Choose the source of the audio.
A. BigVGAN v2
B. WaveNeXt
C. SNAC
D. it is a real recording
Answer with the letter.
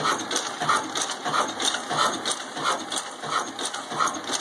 D